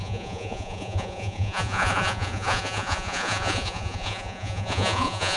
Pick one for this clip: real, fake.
fake